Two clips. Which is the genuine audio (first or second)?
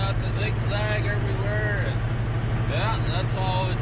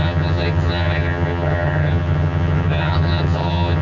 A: first